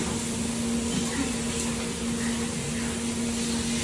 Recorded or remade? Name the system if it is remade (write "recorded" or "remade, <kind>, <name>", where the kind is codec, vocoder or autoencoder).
recorded